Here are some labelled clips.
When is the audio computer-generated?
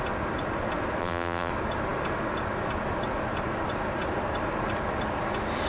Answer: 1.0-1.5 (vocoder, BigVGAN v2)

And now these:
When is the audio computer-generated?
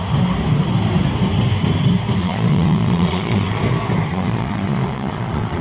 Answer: 2.2-3.6 (vocoder, Vocos); 4.1-5.6